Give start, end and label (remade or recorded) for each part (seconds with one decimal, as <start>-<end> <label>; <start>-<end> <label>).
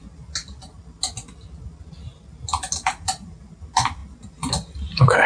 0.0-5.3 recorded